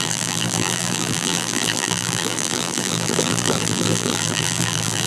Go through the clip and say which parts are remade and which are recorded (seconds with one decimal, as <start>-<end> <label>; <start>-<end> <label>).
0.0-5.1 remade